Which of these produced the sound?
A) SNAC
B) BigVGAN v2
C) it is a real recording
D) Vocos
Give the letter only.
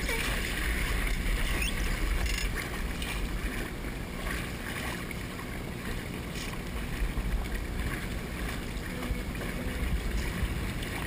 C